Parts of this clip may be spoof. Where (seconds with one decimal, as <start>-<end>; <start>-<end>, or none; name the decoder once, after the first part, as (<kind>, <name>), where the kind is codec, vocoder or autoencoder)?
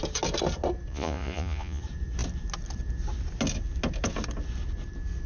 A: 0.9-1.8 (vocoder, Vocos)